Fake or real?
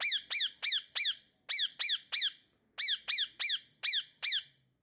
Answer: real